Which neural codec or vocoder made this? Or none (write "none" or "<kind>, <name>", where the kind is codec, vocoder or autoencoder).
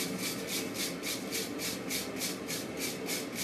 none